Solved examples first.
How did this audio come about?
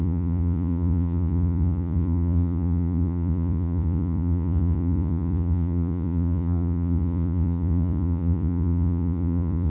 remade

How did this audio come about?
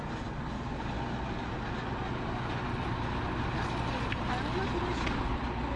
recorded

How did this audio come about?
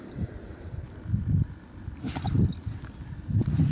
recorded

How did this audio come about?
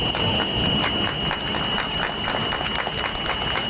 recorded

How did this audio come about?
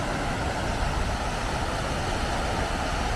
recorded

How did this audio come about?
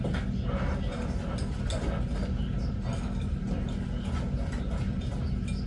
recorded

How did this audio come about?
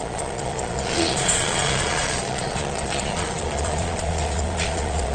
remade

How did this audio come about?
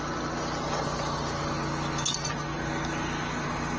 recorded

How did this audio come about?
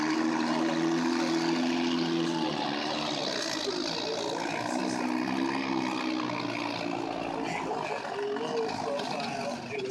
recorded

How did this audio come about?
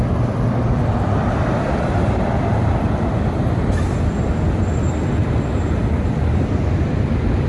recorded